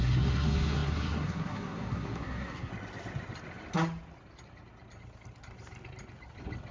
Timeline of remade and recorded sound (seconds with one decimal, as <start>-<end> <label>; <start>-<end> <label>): 0.0-2.7 remade; 2.7-6.7 recorded